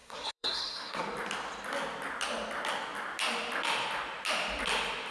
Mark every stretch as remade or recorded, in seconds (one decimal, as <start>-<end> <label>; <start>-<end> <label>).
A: 0.0-1.0 remade; 1.0-5.1 recorded